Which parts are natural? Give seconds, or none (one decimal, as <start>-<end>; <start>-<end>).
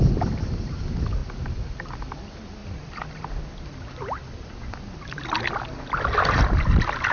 0.0-2.6